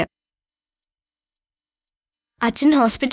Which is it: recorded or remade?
remade